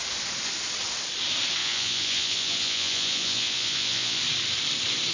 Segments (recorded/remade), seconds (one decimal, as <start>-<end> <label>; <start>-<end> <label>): 0.0-1.6 recorded; 1.6-4.2 remade; 4.2-5.1 recorded